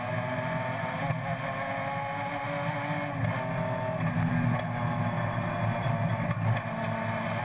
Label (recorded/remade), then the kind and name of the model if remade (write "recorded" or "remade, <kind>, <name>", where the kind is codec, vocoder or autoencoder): recorded